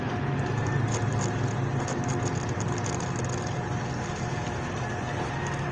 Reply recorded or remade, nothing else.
recorded